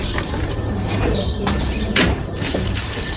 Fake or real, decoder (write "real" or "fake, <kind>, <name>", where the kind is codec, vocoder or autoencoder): fake, vocoder, BigVGAN v2